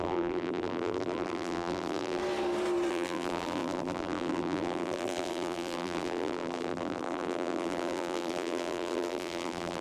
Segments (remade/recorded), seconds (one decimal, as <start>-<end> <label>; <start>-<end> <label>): 0.0-2.2 remade; 2.2-2.9 recorded; 2.9-9.8 remade